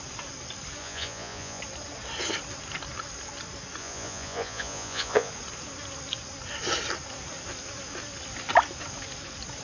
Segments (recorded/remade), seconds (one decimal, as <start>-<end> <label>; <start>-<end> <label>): 0.0-0.8 recorded; 0.8-1.6 remade; 1.6-3.8 recorded; 3.8-5.3 remade; 5.3-9.6 recorded